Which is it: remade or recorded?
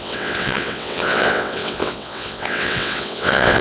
remade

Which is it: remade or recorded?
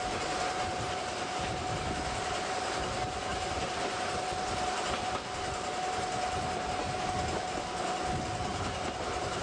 recorded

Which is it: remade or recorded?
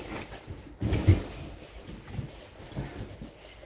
recorded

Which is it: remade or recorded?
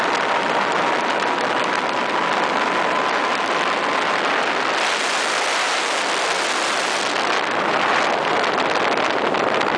recorded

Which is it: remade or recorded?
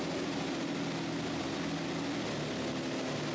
recorded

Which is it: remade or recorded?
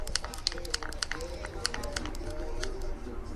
recorded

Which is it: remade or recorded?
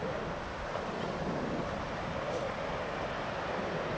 recorded